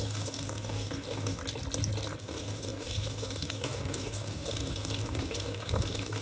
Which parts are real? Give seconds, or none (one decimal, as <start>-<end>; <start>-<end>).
1.4-2.2